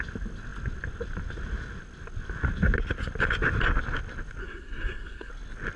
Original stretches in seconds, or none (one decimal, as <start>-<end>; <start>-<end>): 0.0-4.4; 5.3-5.8